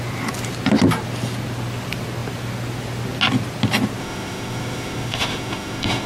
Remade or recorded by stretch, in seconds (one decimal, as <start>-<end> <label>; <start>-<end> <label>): 0.0-4.0 recorded; 4.0-6.1 remade